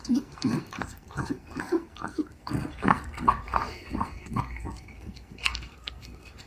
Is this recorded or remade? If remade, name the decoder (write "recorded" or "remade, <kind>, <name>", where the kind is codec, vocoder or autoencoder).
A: remade, codec, SNAC